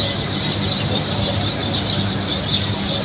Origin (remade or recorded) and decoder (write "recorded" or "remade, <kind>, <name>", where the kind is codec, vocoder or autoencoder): recorded